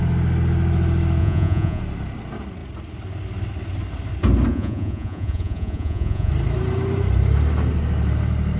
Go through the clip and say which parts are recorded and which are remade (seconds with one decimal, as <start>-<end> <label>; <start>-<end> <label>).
0.0-1.2 recorded; 1.2-1.8 remade; 1.8-4.5 recorded; 4.5-6.3 remade; 6.3-8.6 recorded